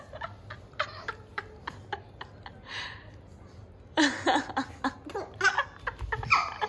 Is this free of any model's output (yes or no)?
yes